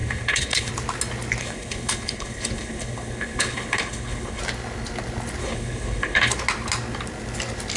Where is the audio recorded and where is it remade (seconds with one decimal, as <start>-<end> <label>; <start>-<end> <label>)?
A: 0.0-0.7 remade; 0.7-1.4 recorded; 1.4-4.4 remade; 4.4-5.4 recorded; 5.4-6.3 remade; 6.3-7.8 recorded